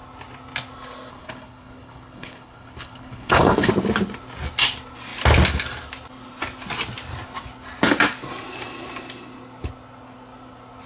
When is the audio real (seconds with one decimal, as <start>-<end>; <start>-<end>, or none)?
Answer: 0.0-1.1; 3.7-10.9